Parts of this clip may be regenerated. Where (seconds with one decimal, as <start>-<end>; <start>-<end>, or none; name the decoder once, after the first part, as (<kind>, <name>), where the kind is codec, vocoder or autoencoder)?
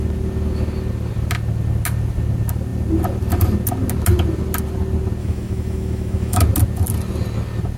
5.2-6.4 (autoencoder, DAC-VAE)